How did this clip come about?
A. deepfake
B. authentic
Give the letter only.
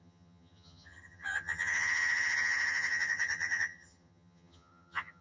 A